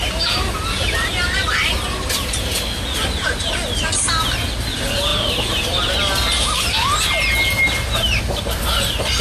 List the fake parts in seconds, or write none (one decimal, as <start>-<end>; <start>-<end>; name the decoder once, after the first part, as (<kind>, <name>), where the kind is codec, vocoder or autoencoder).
none